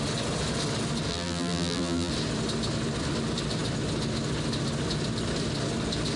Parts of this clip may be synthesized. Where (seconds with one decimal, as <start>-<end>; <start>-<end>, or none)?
1.1-2.1